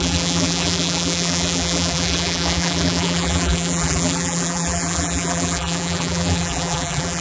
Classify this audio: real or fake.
fake